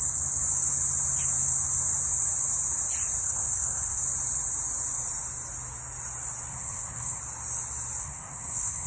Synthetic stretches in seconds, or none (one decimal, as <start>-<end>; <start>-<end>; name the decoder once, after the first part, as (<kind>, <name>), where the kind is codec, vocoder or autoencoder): 3.2-4.0 (codec, SNAC); 6.5-7.2; 8.0-8.9